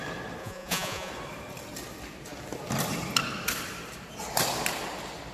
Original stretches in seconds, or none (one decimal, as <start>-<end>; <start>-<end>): 0.0-0.4; 1.1-5.3